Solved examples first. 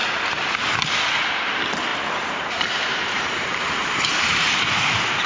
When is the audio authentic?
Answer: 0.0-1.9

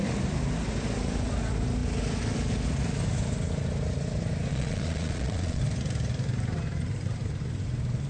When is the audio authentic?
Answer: 0.0-4.5; 5.6-8.1

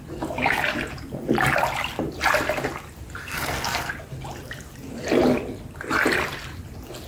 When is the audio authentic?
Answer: 0.0-3.2; 3.9-7.1

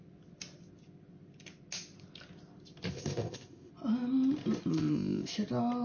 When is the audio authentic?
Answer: 0.0-2.9; 3.7-4.7; 5.3-5.8

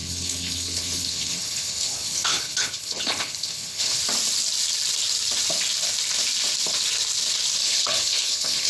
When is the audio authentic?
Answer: 4.0-7.6

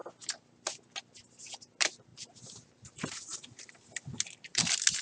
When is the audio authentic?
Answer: 0.0-2.1; 3.7-5.0

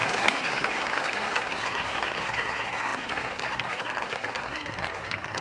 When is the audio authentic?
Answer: none

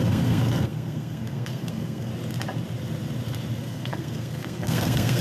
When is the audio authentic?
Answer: 2.1-3.6